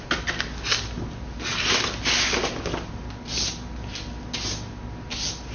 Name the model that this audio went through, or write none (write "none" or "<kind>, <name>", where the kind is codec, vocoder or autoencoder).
none